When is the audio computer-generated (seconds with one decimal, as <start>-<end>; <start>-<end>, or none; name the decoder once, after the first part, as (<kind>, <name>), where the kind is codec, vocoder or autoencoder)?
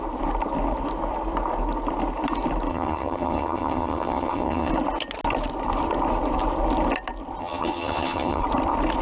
2.7-4.7 (vocoder, HiFi-GAN); 7.4-8.4